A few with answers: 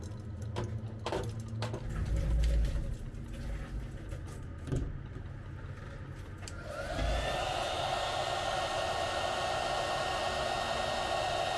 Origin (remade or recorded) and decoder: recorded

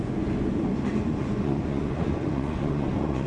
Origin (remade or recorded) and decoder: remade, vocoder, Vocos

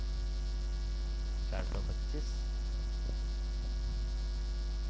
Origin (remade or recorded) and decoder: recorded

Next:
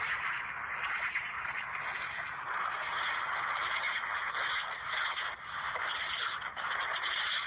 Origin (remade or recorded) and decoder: recorded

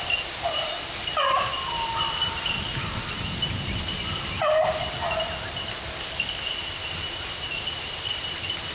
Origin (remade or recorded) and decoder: recorded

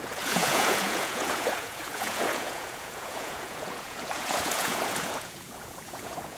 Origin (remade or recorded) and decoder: remade, vocoder, Vocos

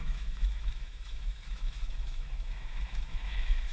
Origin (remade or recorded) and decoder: remade, autoencoder, DAC-VAE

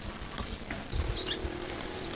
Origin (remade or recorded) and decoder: recorded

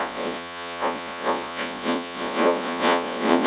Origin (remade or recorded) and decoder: remade, vocoder, Vocos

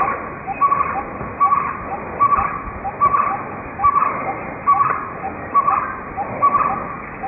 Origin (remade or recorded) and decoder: recorded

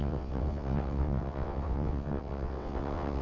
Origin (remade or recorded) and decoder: remade, vocoder, WaveNeXt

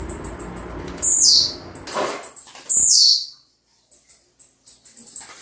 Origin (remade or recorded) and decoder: recorded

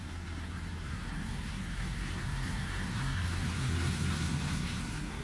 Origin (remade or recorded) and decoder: remade, codec, SNAC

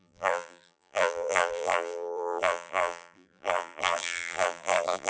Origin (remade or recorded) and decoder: remade, vocoder, BigVGAN v2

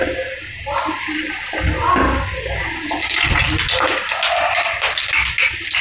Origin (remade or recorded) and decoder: recorded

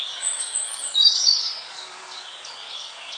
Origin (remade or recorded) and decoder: remade, codec, DAC